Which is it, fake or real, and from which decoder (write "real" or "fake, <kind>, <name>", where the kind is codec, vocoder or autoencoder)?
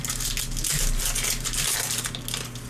real